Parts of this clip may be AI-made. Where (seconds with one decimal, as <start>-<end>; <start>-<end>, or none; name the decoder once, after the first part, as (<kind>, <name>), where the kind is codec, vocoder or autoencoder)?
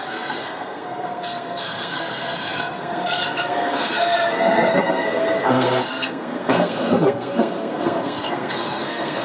0.0-9.2 (codec, SNAC)